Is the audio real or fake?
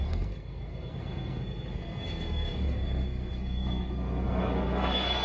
fake